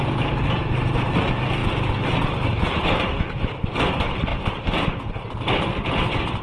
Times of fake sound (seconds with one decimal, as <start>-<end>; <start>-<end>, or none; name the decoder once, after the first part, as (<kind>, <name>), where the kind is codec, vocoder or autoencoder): none